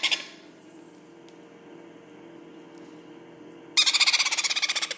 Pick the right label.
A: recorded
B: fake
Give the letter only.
A